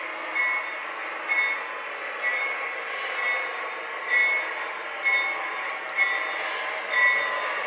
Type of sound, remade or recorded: recorded